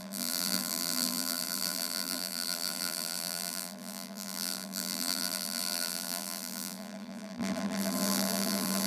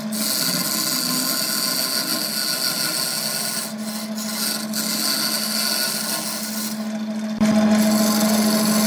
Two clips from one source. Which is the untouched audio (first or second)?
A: second